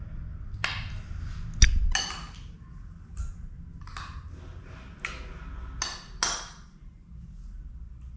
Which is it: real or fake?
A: real